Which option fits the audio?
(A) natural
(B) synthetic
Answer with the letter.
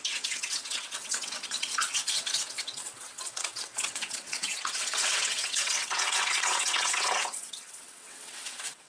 B